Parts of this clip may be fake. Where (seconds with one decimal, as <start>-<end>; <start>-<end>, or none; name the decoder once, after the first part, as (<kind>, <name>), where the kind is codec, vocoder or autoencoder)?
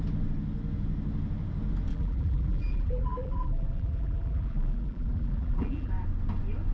1.9-5.9 (vocoder, BigVGAN v2)